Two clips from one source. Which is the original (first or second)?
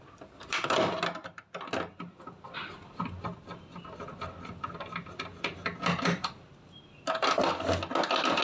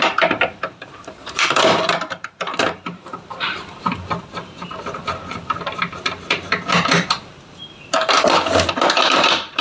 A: first